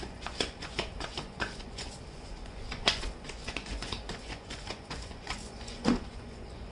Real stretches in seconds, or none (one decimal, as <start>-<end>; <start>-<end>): none